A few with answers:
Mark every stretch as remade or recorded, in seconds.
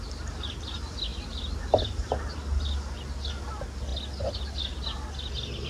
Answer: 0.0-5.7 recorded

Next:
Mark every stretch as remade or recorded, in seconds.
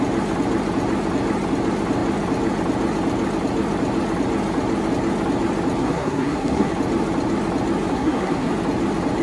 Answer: 0.0-5.8 recorded; 5.8-6.7 remade; 6.7-7.9 recorded; 7.9-8.5 remade; 8.5-9.2 recorded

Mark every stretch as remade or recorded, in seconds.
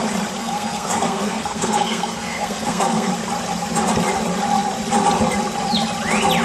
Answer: 0.0-0.4 recorded; 0.4-3.1 remade; 3.1-6.4 recorded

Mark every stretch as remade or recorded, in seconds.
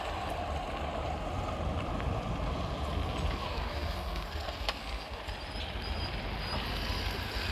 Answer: 0.0-3.4 recorded; 3.4-5.3 remade; 5.3-7.5 recorded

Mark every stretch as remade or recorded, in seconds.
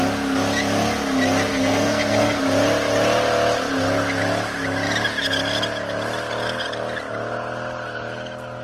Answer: 0.0-1.5 recorded; 1.5-2.4 remade; 2.4-8.6 recorded